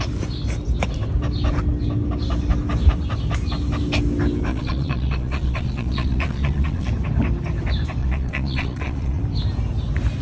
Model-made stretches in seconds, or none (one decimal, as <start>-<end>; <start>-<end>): 4.5-6.9; 8.0-9.2